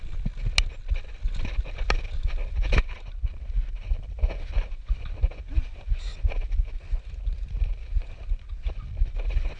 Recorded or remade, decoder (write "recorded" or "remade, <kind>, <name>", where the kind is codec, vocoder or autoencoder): recorded